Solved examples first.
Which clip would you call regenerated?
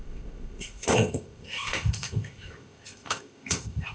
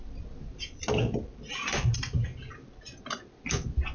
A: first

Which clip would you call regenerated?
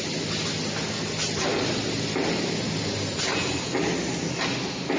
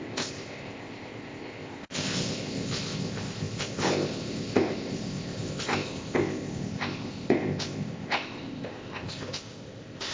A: second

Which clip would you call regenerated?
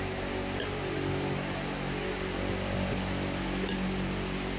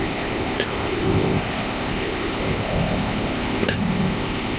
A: second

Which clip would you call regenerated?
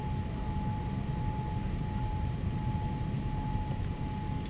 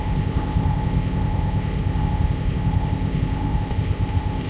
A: second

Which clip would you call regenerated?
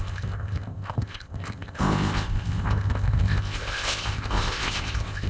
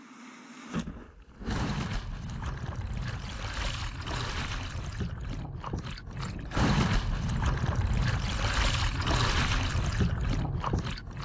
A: first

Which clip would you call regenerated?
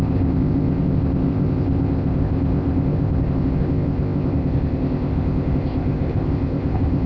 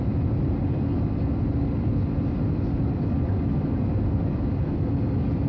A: first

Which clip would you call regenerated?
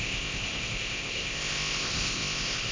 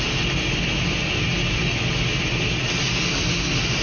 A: first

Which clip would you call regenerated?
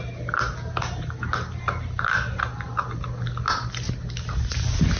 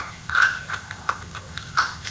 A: second